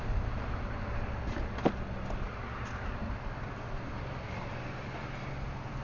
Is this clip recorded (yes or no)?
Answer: yes